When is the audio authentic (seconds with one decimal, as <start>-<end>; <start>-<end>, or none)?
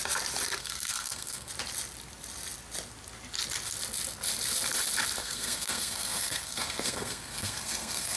0.0-0.6; 1.5-5.2